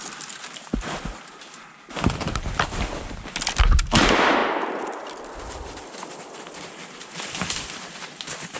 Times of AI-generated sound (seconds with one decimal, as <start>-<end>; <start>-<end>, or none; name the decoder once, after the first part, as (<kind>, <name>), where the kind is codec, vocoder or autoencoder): none